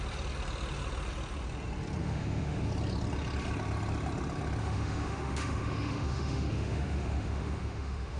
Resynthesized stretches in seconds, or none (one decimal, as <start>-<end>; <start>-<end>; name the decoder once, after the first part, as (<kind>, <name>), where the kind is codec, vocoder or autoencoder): 2.0-2.7 (autoencoder, DAC-VAE); 4.6-8.2